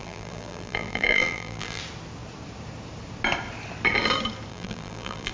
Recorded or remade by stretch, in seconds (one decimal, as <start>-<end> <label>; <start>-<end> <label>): 0.0-1.8 remade; 1.8-4.5 recorded; 4.5-5.3 remade